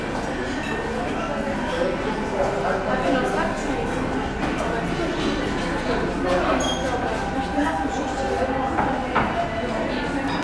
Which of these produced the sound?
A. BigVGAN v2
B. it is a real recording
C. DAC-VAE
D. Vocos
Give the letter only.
B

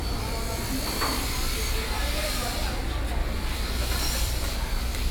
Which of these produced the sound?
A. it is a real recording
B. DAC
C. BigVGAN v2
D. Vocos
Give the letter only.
C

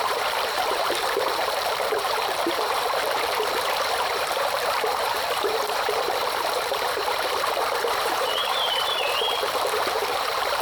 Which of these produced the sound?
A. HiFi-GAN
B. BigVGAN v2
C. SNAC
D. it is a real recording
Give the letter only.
B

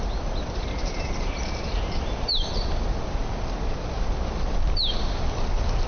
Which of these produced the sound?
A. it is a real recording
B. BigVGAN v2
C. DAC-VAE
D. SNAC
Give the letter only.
B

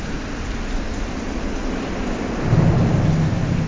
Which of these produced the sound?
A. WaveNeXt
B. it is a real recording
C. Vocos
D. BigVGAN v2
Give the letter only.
B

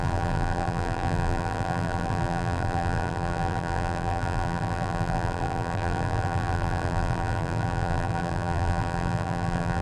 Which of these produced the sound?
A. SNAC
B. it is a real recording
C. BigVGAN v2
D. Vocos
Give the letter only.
C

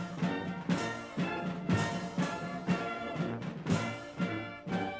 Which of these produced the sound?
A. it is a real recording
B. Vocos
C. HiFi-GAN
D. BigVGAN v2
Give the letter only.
A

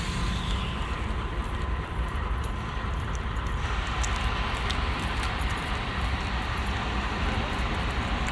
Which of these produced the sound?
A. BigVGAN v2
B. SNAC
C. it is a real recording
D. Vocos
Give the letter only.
A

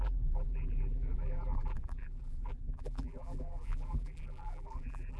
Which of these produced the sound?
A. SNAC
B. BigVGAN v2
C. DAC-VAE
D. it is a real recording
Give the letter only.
B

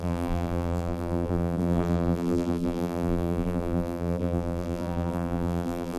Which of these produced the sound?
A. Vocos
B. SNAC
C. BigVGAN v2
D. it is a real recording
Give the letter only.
C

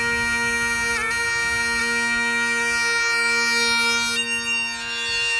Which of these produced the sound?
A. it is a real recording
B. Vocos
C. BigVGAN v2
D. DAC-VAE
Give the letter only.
A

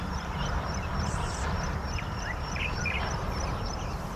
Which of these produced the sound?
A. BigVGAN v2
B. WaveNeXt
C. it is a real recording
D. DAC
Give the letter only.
A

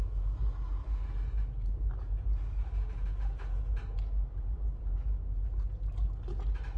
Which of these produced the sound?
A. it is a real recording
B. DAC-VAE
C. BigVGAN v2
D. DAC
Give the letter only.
A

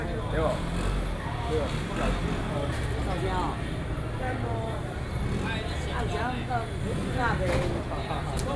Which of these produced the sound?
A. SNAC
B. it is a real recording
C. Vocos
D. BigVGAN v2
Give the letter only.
B